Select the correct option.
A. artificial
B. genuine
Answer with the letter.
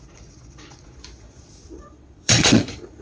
A